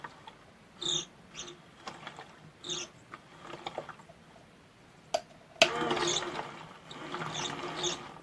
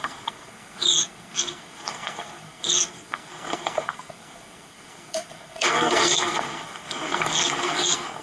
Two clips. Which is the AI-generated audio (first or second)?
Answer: second